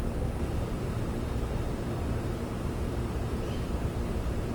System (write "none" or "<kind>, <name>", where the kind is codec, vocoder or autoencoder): vocoder, BigVGAN v2